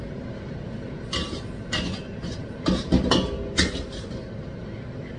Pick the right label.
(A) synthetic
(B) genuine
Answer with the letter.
B